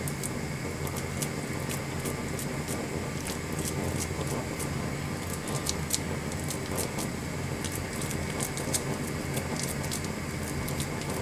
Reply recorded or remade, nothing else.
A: recorded